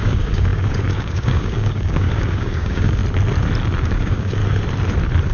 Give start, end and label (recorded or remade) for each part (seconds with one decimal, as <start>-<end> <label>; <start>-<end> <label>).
0.0-3.0 remade; 3.0-3.8 recorded; 3.8-4.4 remade; 4.4-5.3 recorded